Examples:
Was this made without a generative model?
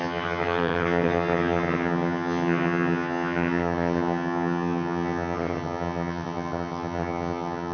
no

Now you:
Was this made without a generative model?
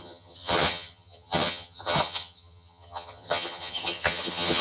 no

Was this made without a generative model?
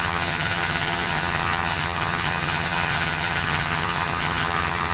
no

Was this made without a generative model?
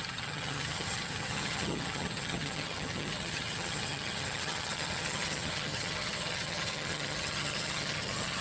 no